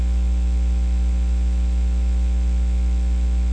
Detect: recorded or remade recorded